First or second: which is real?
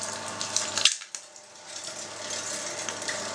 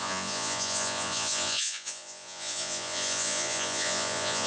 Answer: first